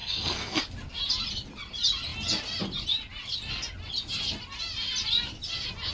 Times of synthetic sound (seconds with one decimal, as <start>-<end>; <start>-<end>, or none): 0.0-0.6